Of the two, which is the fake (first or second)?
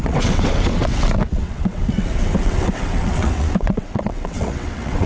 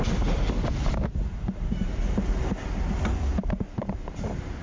first